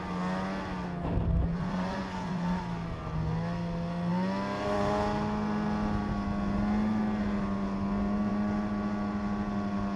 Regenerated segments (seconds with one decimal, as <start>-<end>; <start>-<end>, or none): 1.5-2.6